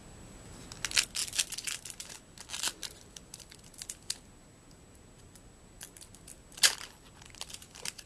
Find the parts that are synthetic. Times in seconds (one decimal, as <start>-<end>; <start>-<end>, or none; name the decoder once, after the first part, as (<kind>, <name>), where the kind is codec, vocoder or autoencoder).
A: none